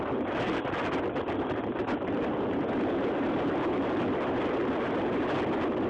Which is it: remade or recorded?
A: remade